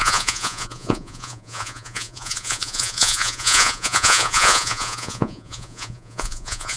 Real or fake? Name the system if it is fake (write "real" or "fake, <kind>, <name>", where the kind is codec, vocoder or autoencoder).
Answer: fake, vocoder, Vocos